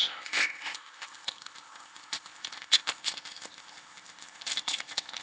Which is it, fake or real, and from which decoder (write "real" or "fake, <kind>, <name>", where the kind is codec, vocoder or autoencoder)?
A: fake, codec, ZipCodec